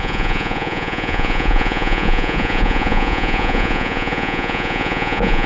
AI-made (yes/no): yes